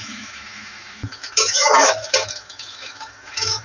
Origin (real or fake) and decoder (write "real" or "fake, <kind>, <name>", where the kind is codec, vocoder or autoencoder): fake, autoencoder, DAC-VAE